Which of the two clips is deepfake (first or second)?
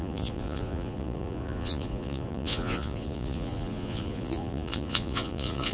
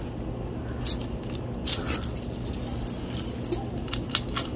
first